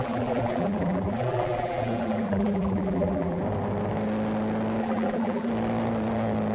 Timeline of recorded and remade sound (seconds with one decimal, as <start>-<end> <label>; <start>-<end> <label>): 0.0-3.4 remade; 3.4-4.8 recorded; 4.8-5.5 remade; 5.5-6.5 recorded